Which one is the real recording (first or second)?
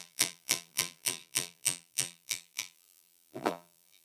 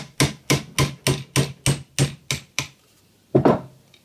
second